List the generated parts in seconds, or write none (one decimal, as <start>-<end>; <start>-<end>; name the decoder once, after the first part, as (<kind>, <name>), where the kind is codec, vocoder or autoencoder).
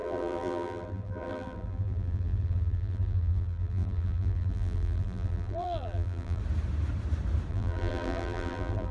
0.0-6.4 (vocoder, BigVGAN v2); 7.5-8.9